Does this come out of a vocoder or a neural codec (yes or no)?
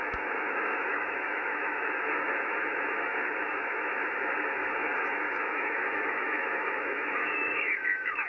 yes